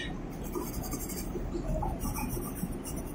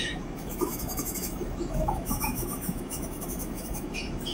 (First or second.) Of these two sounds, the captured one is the first